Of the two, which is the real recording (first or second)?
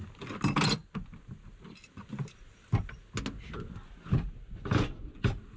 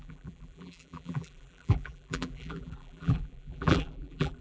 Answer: first